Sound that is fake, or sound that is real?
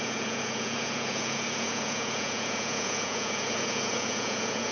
fake